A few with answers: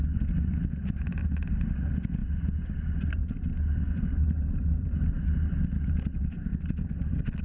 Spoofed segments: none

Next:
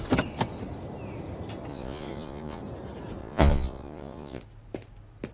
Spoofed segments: 1.7-2.6 (vocoder, Vocos); 3.2-4.4

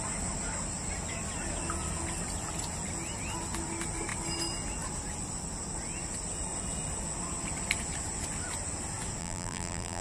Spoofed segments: 9.2-10.0 (vocoder, BigVGAN v2)

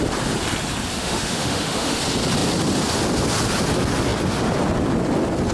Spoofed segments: 1.0-2.0 (autoencoder, DAC-VAE)

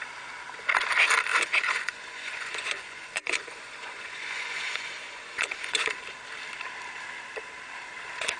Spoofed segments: 1.3-6.0 (vocoder, Vocos)